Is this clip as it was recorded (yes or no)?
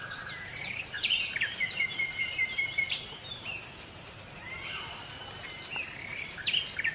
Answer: no